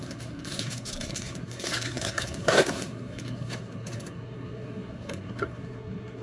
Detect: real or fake fake